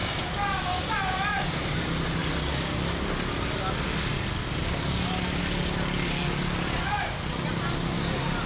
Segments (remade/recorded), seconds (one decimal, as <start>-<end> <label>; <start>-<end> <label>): 0.0-8.5 recorded